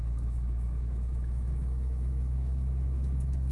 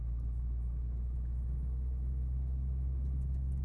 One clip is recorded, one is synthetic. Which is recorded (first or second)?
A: second